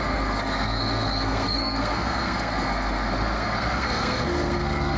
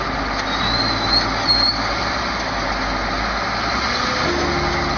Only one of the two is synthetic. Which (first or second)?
first